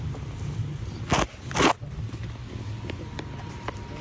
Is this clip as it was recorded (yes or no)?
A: yes